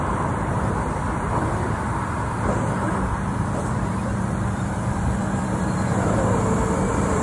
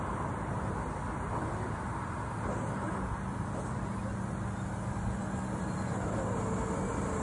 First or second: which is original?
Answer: second